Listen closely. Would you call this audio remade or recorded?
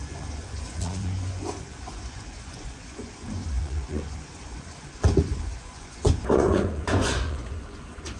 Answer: remade